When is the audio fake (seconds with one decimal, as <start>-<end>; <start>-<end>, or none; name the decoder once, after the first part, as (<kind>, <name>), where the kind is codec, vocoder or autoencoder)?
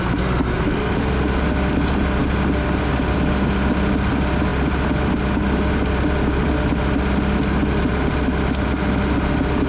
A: none